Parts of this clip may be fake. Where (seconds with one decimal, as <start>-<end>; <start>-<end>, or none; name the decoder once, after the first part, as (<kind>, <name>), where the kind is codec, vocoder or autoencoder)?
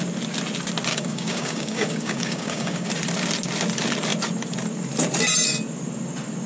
0.9-2.9 (codec, DAC)